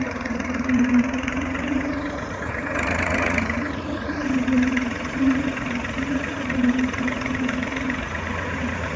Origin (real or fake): fake